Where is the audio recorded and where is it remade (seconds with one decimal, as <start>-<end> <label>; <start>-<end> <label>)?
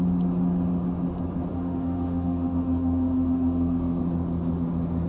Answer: 0.0-1.5 recorded; 1.5-4.0 remade; 4.0-5.1 recorded